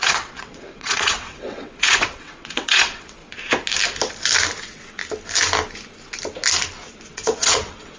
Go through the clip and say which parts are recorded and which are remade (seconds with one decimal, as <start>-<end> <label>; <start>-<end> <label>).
0.0-3.2 remade; 3.2-4.6 recorded; 4.6-5.0 remade; 5.0-7.1 recorded; 7.1-8.0 remade